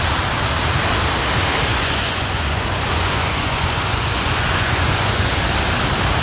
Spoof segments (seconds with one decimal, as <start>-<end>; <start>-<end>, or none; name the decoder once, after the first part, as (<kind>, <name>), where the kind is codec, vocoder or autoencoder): 1.7-5.3 (vocoder, Vocos)